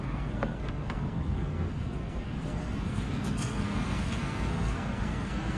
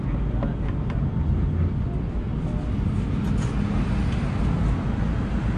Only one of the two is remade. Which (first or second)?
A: first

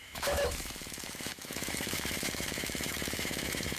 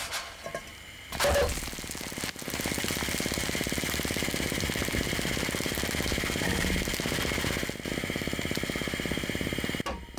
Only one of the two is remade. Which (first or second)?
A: first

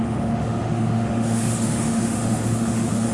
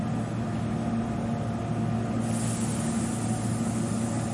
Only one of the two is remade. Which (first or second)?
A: first